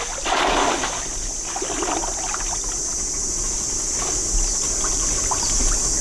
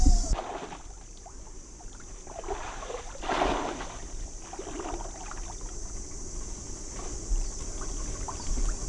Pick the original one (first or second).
first